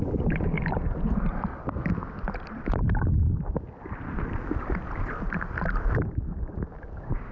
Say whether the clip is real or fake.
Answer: real